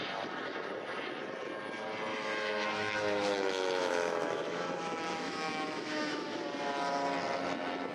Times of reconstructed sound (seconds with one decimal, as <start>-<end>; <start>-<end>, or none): 2.1-6.4